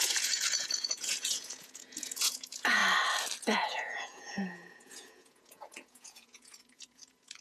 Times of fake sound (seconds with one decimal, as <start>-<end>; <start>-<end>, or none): 0.0-2.8; 3.4-7.4